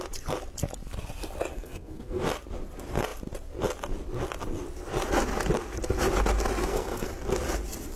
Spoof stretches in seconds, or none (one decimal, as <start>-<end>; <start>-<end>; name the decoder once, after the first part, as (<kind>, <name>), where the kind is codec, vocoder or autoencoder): 1.5-2.2 (codec, SNAC); 6.6-7.1